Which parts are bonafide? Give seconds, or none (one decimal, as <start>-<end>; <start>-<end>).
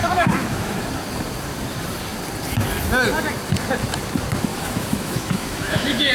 0.8-4.5